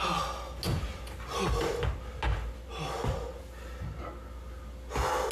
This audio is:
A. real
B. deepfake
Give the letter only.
A